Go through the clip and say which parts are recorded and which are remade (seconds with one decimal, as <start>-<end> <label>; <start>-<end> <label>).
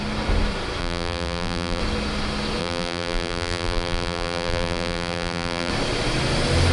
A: 0.0-0.8 recorded; 0.8-1.8 remade; 1.8-2.6 recorded; 2.6-5.7 remade; 5.7-6.7 recorded